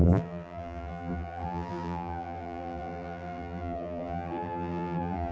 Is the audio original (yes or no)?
no